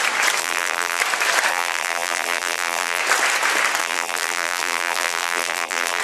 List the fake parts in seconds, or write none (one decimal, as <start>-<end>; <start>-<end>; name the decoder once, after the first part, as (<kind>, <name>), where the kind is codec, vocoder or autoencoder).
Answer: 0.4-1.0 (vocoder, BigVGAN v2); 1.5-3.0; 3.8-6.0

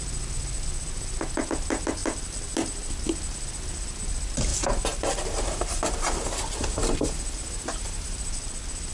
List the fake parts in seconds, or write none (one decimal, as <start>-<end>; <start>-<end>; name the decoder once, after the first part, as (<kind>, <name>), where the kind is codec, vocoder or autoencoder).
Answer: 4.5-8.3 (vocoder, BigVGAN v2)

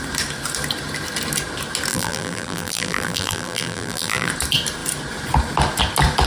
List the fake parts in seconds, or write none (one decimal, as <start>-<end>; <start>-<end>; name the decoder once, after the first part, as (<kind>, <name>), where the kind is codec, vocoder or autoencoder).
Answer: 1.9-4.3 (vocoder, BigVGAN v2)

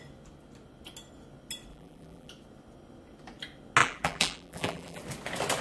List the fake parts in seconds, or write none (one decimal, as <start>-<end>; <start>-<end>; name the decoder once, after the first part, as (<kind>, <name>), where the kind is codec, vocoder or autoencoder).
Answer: 1.7-2.3 (vocoder, BigVGAN v2); 3.8-5.0

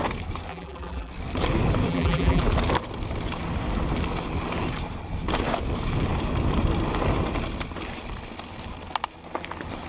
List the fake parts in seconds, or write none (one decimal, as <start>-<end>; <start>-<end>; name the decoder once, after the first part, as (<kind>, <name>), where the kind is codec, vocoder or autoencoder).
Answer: 0.5-1.1 (vocoder, BigVGAN v2); 1.9-2.4

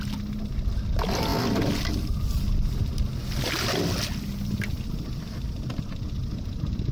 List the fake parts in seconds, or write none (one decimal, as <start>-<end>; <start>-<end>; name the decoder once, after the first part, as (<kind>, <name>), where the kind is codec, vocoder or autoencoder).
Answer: none

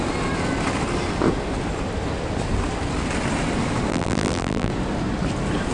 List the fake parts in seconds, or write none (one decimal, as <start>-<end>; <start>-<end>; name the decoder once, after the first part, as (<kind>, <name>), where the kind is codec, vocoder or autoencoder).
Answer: 3.9-4.7 (vocoder, BigVGAN v2)

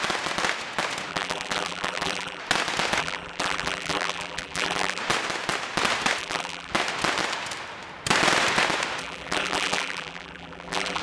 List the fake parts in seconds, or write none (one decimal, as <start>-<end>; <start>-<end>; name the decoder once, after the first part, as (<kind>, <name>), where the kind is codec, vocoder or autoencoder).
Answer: 1.1-2.4 (vocoder, BigVGAN v2); 3.0-5.0; 6.2-6.7; 9.0-11.0